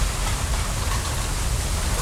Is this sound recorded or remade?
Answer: recorded